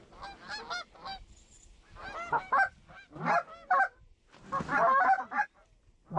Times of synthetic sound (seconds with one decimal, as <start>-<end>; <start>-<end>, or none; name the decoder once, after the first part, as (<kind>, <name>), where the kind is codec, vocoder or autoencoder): none